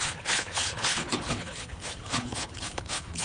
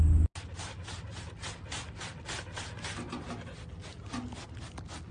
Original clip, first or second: second